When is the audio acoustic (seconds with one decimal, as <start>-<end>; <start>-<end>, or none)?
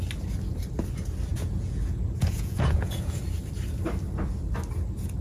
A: 0.0-1.3; 3.2-5.2